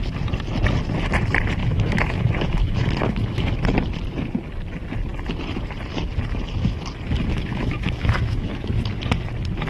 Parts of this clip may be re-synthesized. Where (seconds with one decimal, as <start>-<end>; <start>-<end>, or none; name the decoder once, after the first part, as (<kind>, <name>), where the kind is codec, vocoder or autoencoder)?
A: 1.6-3.5 (autoencoder, DAC-VAE); 7.3-8.8